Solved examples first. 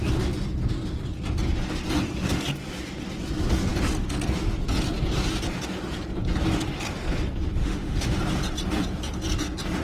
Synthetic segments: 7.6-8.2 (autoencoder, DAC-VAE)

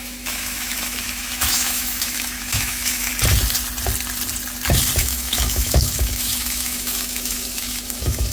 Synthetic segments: 0.0-3.1 (autoencoder, DAC-VAE); 5.0-8.3

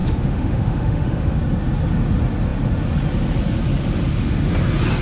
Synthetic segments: 0.0-1.4 (autoencoder, DAC-VAE); 3.8-4.5

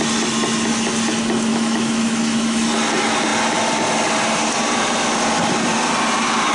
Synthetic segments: 1.5-2.7 (autoencoder, DAC-VAE)

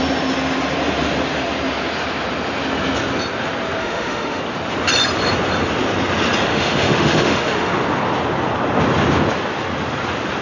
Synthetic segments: 3.8-4.4 (autoencoder, DAC-VAE); 6.5-7.7

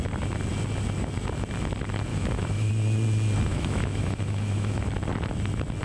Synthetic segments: 2.1-2.7 (autoencoder, DAC-VAE); 3.5-4.8